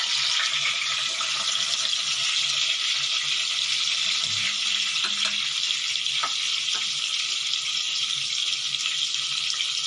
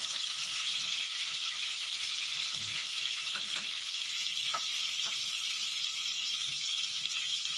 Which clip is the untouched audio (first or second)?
first